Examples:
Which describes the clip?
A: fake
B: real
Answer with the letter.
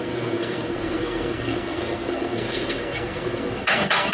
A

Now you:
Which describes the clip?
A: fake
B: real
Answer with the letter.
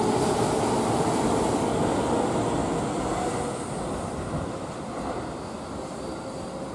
B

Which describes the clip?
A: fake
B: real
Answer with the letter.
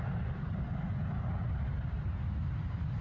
B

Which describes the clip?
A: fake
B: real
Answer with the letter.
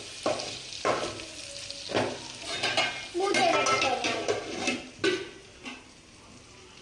B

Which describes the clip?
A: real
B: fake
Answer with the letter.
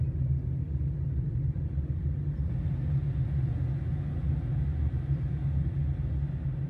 A